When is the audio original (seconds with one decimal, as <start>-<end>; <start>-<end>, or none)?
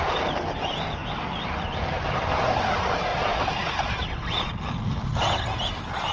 0.0-1.0; 1.9-3.1; 4.6-6.1